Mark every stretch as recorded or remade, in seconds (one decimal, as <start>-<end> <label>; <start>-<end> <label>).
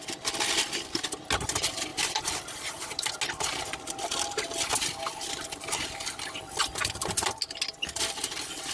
0.0-8.7 recorded